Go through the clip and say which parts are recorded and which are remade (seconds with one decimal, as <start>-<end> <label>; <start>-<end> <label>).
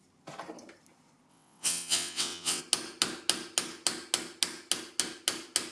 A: 0.0-1.3 recorded; 1.3-2.6 remade; 2.6-5.7 recorded